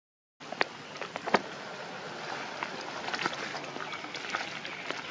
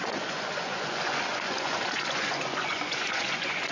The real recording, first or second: first